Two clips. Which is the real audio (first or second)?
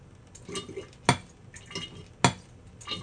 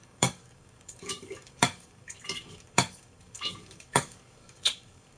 first